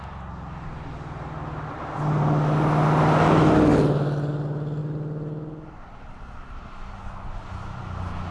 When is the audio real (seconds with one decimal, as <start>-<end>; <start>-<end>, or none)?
0.0-8.3